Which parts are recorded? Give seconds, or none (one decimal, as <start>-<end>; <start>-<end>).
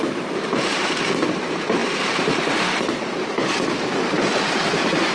none